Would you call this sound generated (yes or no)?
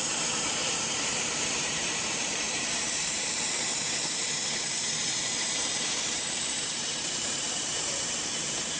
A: yes